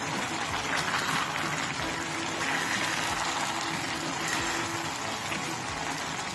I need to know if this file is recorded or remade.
recorded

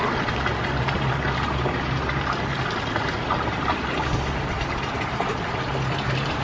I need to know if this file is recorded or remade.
recorded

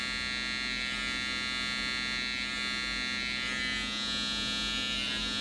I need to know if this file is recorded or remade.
recorded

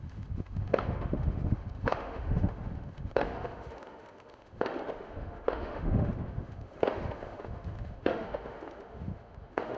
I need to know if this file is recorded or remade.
remade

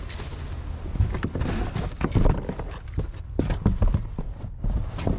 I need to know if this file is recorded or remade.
recorded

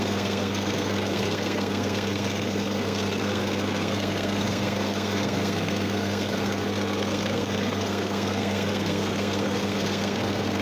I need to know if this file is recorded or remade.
remade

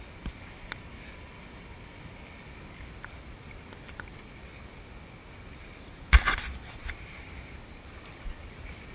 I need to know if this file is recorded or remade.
recorded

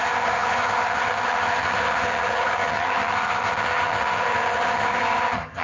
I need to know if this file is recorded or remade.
remade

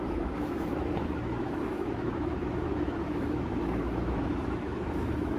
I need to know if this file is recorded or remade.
remade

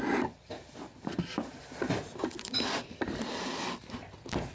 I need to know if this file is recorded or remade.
recorded